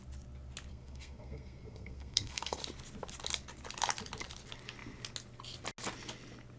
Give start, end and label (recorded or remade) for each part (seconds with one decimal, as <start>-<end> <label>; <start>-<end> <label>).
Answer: 0.0-0.7 recorded; 0.7-2.6 remade; 2.6-6.6 recorded